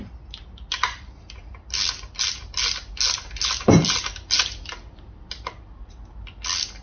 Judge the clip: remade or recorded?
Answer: recorded